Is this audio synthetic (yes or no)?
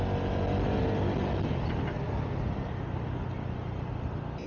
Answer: no